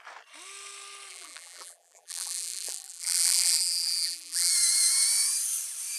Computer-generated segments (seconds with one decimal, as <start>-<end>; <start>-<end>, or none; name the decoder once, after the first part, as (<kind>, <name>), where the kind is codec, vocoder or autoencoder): 1.1-4.5 (vocoder, BigVGAN v2)